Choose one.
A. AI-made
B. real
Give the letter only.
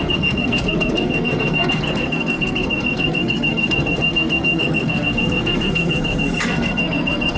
A